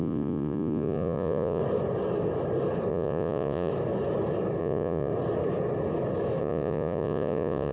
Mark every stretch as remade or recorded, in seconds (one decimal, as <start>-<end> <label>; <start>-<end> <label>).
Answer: 0.0-1.6 remade; 1.6-2.9 recorded; 2.9-3.7 remade; 3.7-4.6 recorded; 4.6-5.1 remade; 5.1-6.4 recorded; 6.4-7.7 remade